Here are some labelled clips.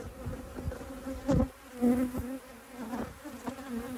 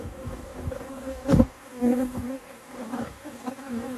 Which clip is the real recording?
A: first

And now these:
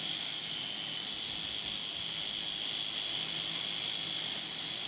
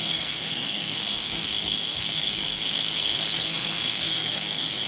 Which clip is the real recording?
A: first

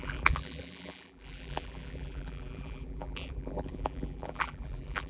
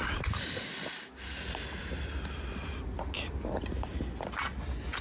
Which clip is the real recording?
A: second